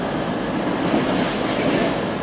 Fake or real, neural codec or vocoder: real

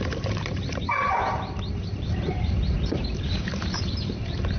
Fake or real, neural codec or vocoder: fake, vocoder, BigVGAN v2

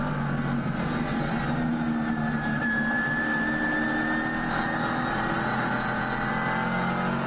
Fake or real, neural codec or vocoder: real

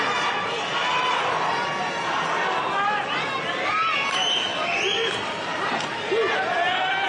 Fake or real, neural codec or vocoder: real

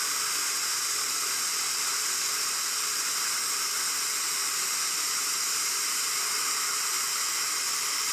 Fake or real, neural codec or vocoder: fake, vocoder, BigVGAN v2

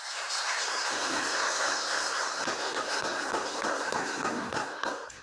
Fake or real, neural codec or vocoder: fake, codec, SNAC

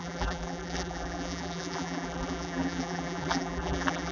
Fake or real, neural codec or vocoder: fake, vocoder, BigVGAN v2